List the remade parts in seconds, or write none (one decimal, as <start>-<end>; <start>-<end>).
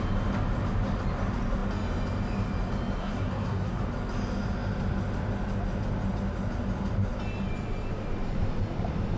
3.0-3.8